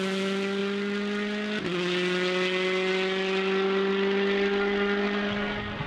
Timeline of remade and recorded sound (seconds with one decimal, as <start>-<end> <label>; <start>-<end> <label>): 0.0-5.9 recorded

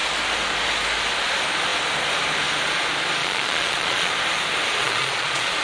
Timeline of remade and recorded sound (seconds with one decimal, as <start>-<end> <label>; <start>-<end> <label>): 0.0-3.2 recorded; 3.2-4.1 remade; 4.1-4.8 recorded; 4.8-5.6 remade

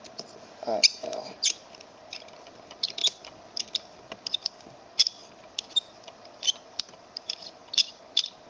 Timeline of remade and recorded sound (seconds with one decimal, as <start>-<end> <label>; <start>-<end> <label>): 0.0-3.0 recorded; 3.0-3.6 remade; 3.6-5.2 recorded; 5.2-8.0 remade; 8.0-8.5 recorded